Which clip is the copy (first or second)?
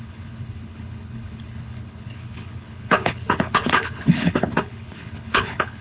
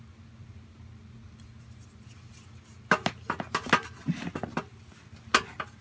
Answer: first